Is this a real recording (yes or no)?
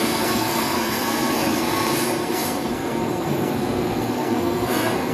no